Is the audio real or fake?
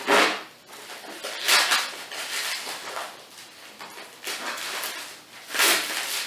real